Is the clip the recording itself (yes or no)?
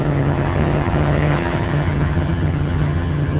no